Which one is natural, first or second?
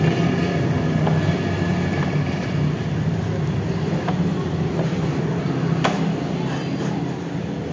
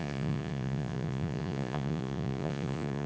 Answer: first